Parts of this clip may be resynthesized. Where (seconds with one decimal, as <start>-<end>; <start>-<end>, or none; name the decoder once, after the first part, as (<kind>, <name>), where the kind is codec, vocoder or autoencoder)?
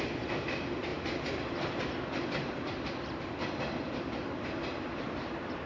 none